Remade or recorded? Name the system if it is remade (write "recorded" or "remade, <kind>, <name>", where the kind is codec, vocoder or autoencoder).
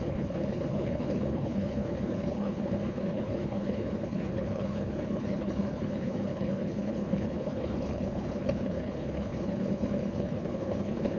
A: remade, codec, HILCodec